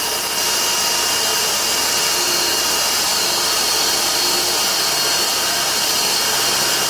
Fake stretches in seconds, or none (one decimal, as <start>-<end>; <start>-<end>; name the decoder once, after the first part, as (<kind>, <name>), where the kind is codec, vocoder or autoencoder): 3.1-4.2 (vocoder, BigVGAN v2); 5.3-6.3